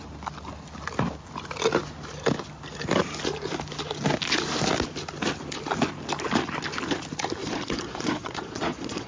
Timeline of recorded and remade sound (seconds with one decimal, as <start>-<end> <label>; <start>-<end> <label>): 0.0-7.4 recorded; 7.4-9.1 remade